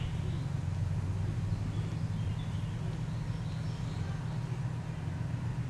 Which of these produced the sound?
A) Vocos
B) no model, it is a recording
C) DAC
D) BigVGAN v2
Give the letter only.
B